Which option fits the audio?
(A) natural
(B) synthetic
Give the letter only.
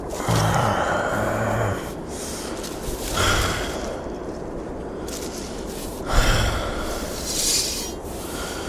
A